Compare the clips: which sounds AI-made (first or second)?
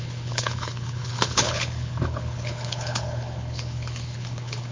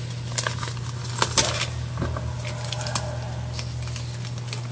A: first